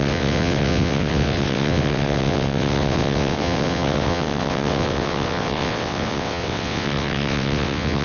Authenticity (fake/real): fake